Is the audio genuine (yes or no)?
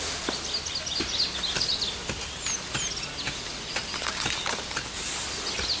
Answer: yes